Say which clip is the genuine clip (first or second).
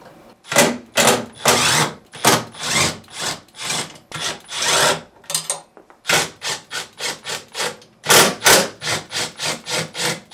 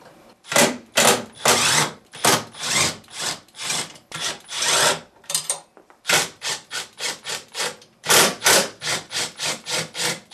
first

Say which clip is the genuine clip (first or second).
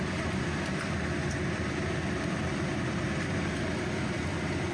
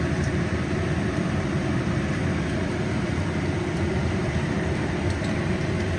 first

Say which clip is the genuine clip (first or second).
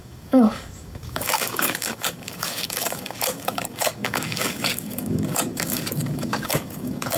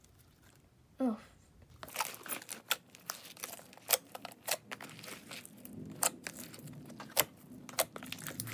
second